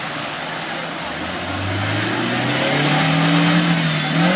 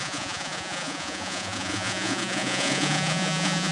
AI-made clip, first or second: second